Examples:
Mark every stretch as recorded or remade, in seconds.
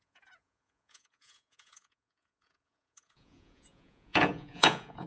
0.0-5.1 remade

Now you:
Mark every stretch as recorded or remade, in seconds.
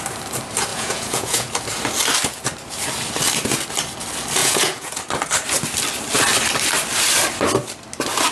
0.0-0.7 recorded; 0.7-1.5 remade; 1.5-4.4 recorded; 4.4-5.0 remade; 5.0-8.3 recorded